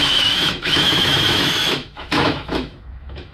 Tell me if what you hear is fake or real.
fake